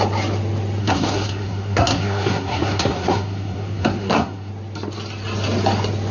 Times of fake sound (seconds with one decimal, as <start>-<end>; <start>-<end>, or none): 0.8-4.5

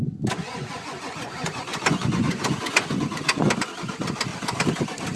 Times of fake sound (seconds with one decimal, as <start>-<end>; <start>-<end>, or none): 0.4-3.5

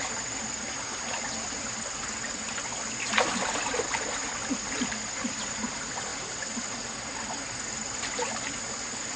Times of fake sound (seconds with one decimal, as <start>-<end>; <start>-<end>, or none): none

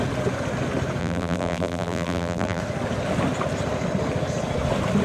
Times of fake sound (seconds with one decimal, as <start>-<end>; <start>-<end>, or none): 1.0-2.6

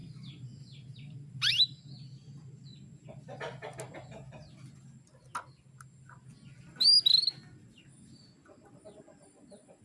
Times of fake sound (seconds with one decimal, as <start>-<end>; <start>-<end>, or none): none

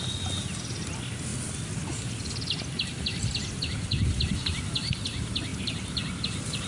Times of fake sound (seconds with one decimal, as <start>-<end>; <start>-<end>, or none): 1.3-4.4; 5.5-6.2

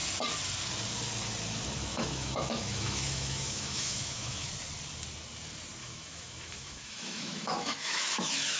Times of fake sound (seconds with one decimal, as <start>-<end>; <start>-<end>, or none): 1.9-4.5; 5.8-8.6